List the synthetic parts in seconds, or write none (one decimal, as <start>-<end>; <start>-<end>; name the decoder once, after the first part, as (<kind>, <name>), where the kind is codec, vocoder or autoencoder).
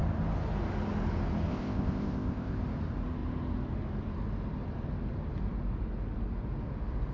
1.5-2.6 (codec, ZipCodec)